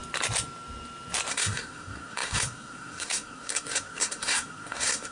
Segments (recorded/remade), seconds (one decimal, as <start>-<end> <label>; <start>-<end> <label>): 0.0-1.3 recorded; 1.3-5.1 remade